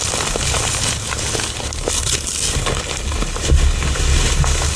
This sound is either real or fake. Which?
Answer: real